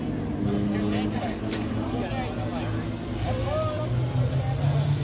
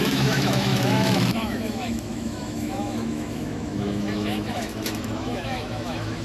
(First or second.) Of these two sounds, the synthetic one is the second